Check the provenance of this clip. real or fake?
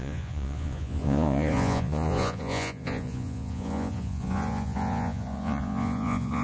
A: fake